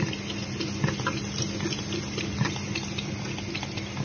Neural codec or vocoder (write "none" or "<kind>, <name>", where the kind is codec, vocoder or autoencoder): none